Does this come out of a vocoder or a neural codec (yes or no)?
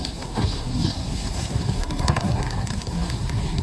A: yes